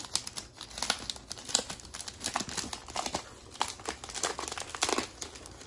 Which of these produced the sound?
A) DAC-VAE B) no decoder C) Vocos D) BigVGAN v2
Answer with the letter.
B